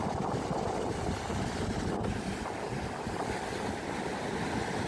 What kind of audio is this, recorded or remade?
recorded